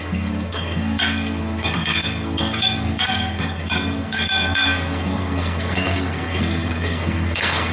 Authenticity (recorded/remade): remade